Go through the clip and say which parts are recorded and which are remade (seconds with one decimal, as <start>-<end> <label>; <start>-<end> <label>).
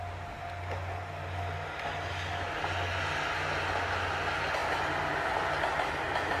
0.0-6.4 recorded